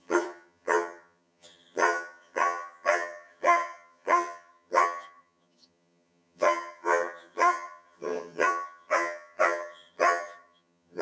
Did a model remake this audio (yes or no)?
yes